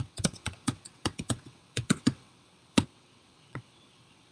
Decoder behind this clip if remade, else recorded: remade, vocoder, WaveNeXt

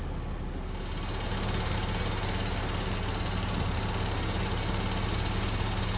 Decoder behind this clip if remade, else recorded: recorded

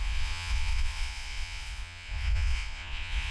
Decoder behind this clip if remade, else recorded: remade, vocoder, Vocos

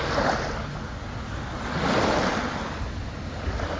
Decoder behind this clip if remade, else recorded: recorded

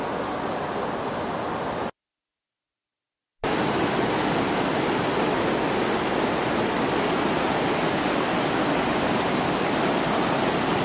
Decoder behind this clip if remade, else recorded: recorded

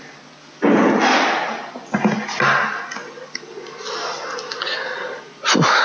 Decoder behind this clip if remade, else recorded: recorded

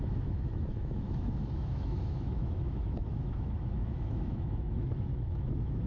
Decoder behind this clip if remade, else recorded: remade, autoencoder, DAC-VAE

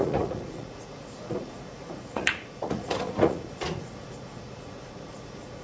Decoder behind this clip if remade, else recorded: remade, vocoder, Vocos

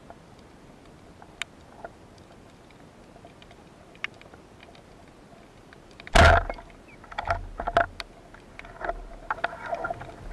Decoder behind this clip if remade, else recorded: recorded